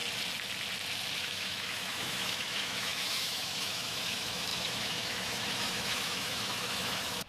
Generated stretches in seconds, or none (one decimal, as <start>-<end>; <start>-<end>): 1.2-7.3